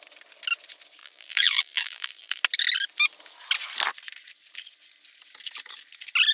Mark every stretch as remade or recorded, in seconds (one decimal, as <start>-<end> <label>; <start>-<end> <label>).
0.0-1.0 recorded; 1.0-2.4 remade; 2.4-6.3 recorded